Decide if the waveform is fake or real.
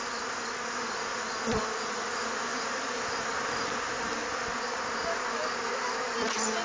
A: real